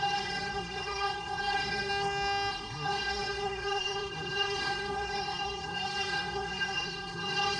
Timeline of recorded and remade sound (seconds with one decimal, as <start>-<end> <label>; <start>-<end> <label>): 0.0-1.9 remade; 1.9-2.5 recorded; 2.5-7.6 remade